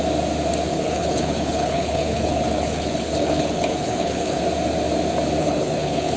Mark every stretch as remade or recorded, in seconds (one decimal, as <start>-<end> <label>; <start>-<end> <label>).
0.0-0.7 recorded; 0.7-4.4 remade; 4.4-5.4 recorded; 5.4-6.2 remade